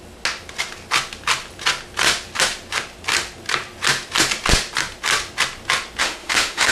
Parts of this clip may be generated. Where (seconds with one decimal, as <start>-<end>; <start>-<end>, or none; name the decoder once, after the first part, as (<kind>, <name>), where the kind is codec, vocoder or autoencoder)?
6.0-6.7 (autoencoder, DAC-VAE)